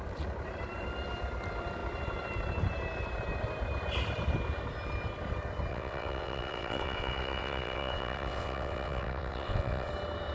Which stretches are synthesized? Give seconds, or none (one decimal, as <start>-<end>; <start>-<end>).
5.7-9.9